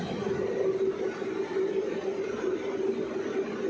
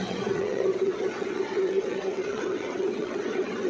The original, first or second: first